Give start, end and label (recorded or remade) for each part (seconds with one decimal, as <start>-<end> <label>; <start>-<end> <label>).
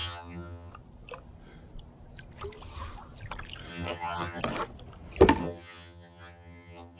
0.0-0.7 remade; 0.7-3.7 recorded; 3.7-4.4 remade; 4.4-5.4 recorded; 5.4-7.0 remade